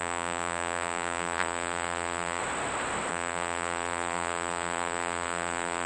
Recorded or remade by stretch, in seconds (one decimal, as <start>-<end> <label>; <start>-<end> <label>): 0.0-2.4 remade; 2.4-3.1 recorded; 3.1-5.9 remade